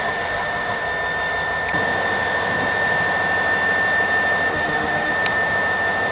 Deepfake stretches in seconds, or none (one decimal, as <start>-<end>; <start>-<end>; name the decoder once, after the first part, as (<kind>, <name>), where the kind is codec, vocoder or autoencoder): 0.0-0.8 (autoencoder, DAC-VAE); 4.5-5.1